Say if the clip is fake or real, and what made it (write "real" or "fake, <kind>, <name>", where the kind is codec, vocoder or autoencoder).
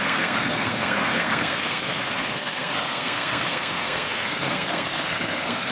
fake, codec, SNAC